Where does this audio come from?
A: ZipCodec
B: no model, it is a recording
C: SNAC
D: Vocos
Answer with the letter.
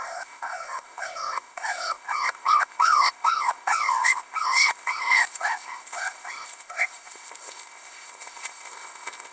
A